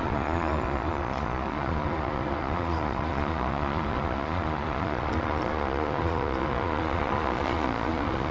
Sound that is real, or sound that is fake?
fake